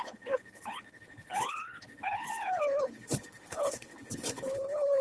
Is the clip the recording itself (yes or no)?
no